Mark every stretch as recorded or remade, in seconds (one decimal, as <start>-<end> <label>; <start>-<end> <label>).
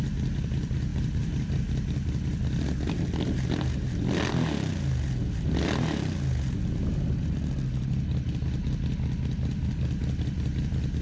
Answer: 0.0-0.9 recorded; 0.9-1.6 remade; 1.6-11.0 recorded